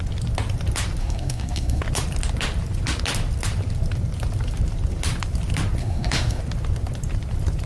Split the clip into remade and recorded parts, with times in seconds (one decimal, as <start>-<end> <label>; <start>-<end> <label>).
0.0-1.0 recorded; 1.0-1.8 remade; 1.8-5.8 recorded; 5.8-6.4 remade; 6.4-7.7 recorded